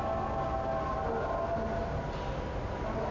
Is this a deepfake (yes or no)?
no